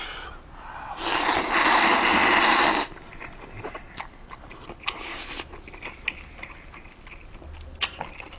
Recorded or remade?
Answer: recorded